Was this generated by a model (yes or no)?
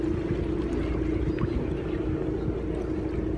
no